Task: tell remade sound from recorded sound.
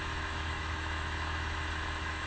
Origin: remade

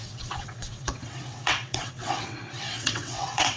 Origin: remade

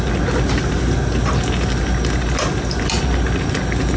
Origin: recorded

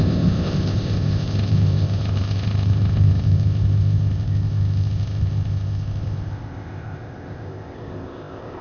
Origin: remade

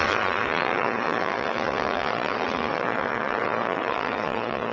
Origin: remade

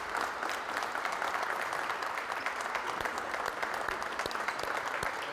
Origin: recorded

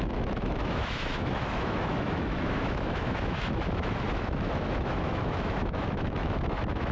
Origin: remade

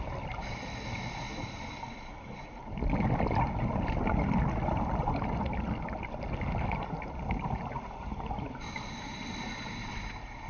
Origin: recorded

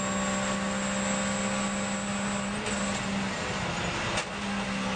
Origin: recorded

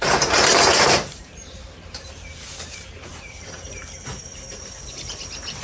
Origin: remade